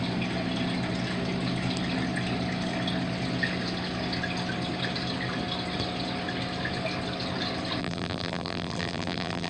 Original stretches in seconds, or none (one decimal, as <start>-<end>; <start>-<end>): 0.0-7.8